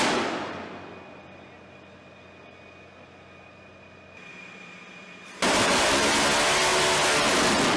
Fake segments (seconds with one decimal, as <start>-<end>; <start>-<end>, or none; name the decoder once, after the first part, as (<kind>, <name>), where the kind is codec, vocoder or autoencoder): 4.3-6.1 (vocoder, BigVGAN v2)